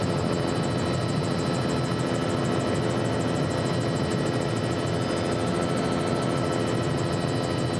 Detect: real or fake real